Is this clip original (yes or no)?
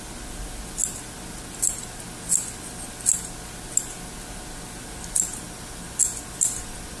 yes